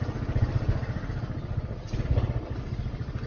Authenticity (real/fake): real